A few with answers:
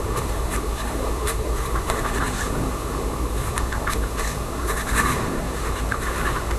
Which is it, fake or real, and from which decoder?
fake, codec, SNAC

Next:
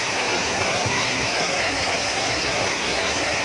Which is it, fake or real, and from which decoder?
fake, codec, SNAC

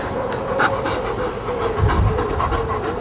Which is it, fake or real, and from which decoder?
real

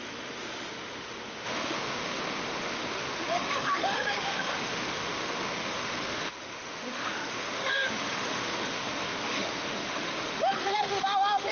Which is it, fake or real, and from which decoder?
fake, autoencoder, DAC-VAE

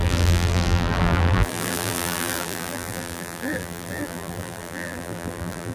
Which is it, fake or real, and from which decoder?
fake, vocoder, BigVGAN v2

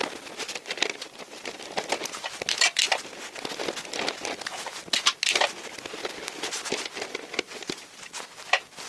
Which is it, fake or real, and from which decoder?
real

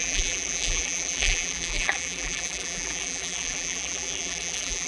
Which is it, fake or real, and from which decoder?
fake, vocoder, BigVGAN v2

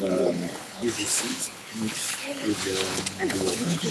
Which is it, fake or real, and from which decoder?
fake, codec, HILCodec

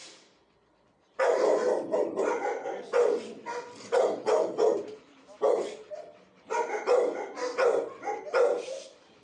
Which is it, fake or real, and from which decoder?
fake, vocoder, BigVGAN v2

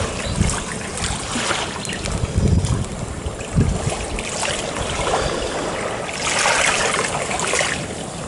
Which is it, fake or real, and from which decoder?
real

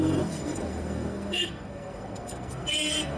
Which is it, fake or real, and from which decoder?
fake, codec, SNAC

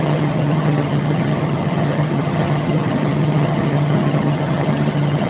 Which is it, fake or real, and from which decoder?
fake, vocoder, HiFi-GAN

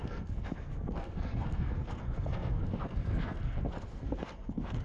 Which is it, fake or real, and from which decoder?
fake, codec, SNAC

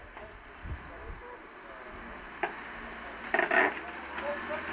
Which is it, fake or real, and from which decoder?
real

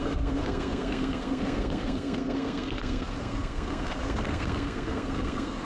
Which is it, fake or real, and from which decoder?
fake, codec, SNAC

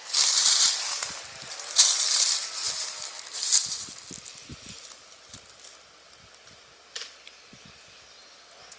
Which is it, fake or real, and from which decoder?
real